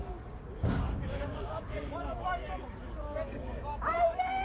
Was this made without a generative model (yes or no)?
no